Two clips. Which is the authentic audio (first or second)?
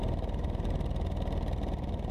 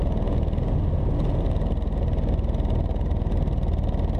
second